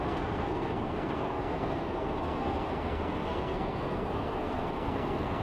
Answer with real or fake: fake